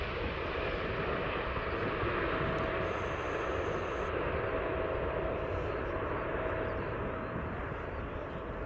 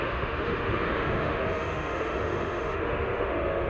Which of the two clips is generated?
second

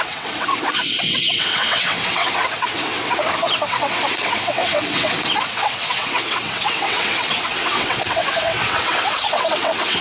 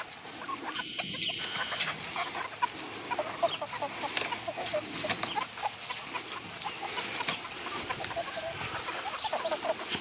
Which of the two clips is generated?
first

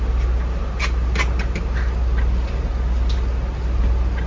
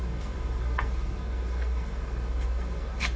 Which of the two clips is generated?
second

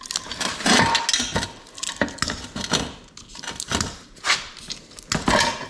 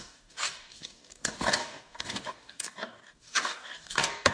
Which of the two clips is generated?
second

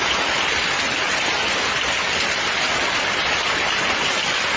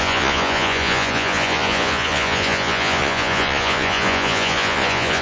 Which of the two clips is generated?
second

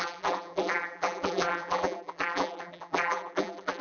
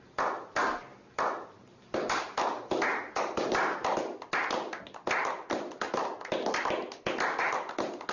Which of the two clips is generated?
first